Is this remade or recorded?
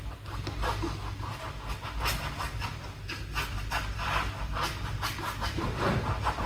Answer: recorded